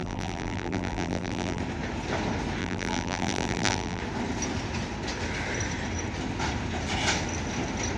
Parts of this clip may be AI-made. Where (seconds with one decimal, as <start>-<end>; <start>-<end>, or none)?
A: 0.0-1.6; 2.6-4.0